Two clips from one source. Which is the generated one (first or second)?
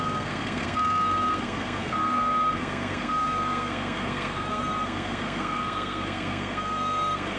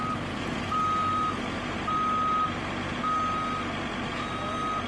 first